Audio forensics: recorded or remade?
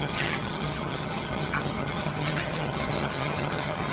remade